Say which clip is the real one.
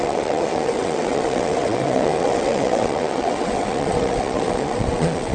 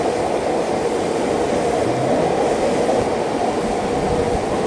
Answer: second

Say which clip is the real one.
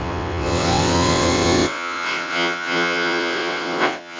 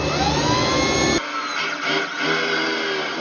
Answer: second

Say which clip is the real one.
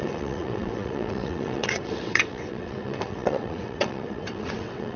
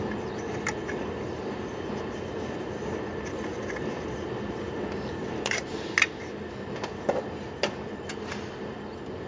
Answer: second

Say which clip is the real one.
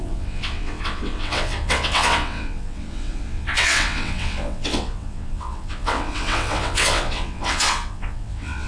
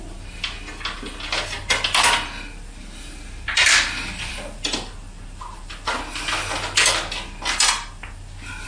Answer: second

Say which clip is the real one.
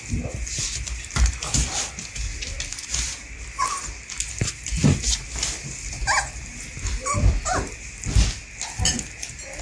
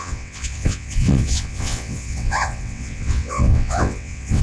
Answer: first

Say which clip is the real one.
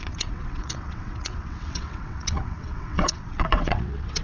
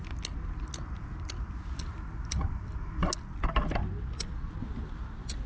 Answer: second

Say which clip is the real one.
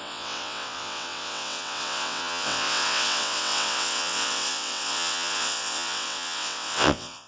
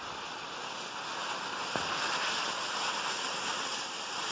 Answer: second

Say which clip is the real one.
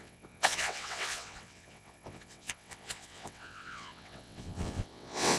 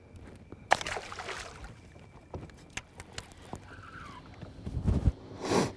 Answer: second